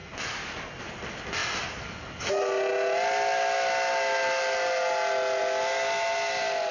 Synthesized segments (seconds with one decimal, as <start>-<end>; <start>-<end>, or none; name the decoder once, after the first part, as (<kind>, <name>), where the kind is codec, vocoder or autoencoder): none